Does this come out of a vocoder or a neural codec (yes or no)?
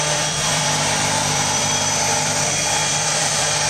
yes